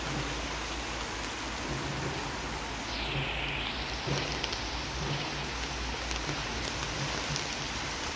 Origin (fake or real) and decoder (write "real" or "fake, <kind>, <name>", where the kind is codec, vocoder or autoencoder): real